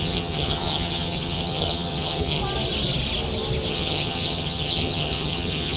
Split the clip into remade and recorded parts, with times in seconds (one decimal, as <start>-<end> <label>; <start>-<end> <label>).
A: 0.0-2.4 remade; 2.4-3.7 recorded; 3.7-5.8 remade